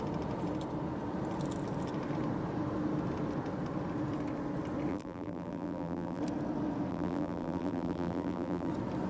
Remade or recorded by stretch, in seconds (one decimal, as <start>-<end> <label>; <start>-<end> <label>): 0.0-4.9 recorded; 4.9-6.2 remade; 6.2-6.9 recorded; 6.9-8.7 remade; 8.7-9.1 recorded